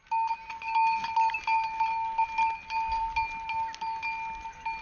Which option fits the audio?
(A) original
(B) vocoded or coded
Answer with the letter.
A